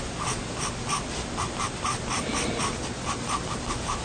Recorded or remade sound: recorded